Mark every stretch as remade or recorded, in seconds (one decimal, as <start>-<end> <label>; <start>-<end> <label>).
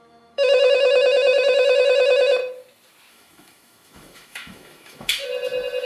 0.0-2.4 remade; 2.4-3.1 recorded; 3.1-5.3 remade; 5.3-5.8 recorded